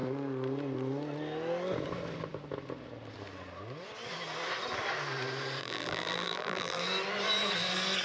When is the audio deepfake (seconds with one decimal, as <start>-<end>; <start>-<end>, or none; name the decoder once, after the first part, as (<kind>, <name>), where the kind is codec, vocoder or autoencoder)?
5.6-6.8 (vocoder, BigVGAN v2)